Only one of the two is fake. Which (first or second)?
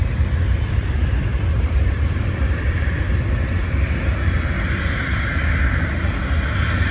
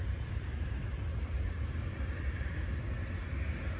first